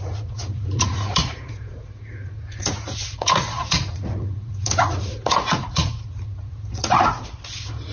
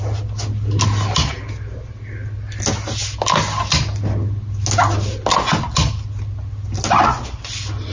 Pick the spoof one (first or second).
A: first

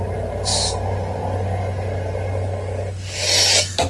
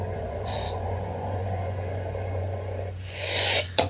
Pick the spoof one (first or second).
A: second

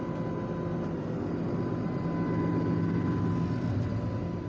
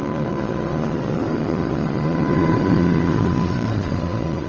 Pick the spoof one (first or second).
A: second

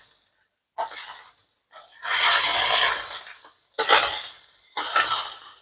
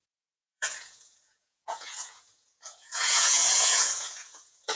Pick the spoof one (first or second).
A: second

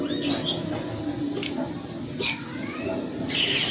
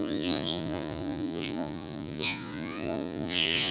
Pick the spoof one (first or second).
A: second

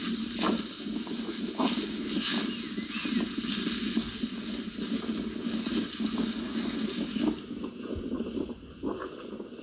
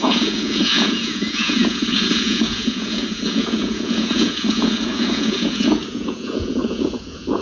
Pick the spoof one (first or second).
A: second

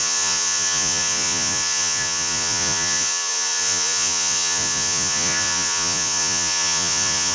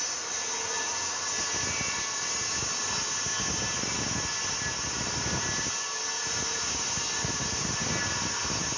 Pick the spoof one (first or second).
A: first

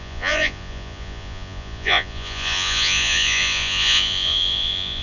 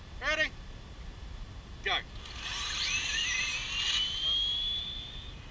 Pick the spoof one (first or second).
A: first